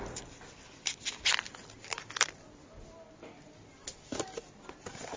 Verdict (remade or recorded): recorded